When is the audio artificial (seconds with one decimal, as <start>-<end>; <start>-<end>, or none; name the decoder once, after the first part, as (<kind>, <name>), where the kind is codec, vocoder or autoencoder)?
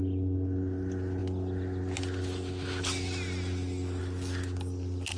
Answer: none